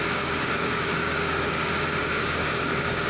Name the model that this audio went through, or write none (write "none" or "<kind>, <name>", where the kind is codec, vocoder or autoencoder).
codec, DAC